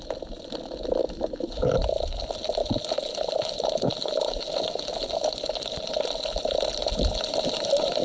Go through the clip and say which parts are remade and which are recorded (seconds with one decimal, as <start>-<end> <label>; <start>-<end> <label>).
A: 0.0-1.0 recorded; 1.0-1.7 remade; 1.7-8.0 recorded

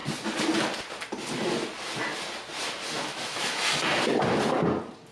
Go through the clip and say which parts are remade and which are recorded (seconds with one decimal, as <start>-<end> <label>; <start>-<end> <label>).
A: 0.0-3.1 recorded; 3.1-3.7 remade; 3.7-5.1 recorded